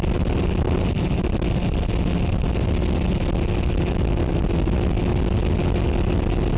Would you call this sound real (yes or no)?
yes